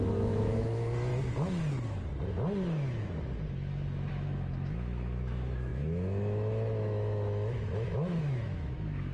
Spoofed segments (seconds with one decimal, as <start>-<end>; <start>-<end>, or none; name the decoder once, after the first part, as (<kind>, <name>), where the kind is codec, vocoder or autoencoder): 0.0-1.1 (autoencoder, DAC-VAE); 4.1-9.1

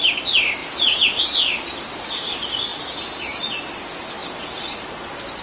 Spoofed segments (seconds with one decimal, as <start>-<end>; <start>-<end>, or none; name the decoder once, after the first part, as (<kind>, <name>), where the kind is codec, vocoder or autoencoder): 0.6-1.2 (vocoder, Vocos); 2.7-3.4

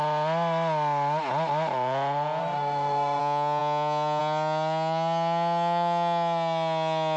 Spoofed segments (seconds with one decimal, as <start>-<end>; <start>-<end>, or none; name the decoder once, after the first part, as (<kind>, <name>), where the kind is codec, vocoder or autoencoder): 2.4-3.2 (codec, SNAC)